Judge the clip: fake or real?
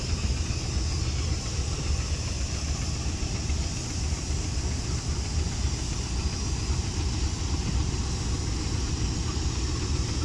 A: real